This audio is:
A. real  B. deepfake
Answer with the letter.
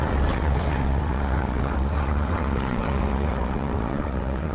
B